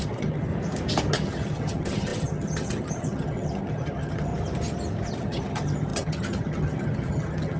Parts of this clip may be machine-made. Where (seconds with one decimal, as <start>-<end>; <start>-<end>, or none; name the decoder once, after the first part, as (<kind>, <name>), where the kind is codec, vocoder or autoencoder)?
0.0-0.5 (vocoder, HiFi-GAN); 1.1-4.3; 5.1-7.6